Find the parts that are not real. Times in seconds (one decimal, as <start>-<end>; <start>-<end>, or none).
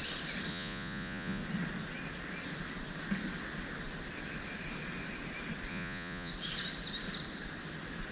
0.5-1.4; 5.7-6.3